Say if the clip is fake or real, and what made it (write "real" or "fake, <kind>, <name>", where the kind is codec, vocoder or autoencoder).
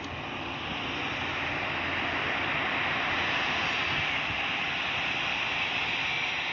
real